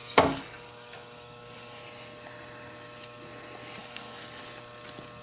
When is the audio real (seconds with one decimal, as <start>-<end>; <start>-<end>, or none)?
1.8-3.8; 4.4-5.2